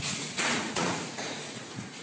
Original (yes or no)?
no